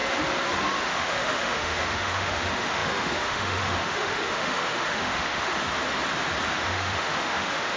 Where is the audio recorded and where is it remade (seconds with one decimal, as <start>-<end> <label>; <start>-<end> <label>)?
0.0-0.9 recorded; 0.9-5.5 remade; 5.5-6.5 recorded; 6.5-7.8 remade